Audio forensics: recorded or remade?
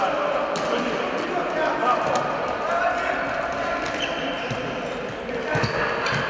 recorded